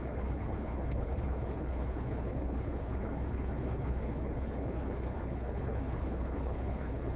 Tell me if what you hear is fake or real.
fake